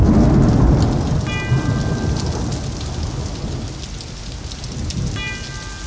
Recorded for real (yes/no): yes